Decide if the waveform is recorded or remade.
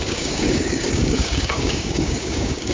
remade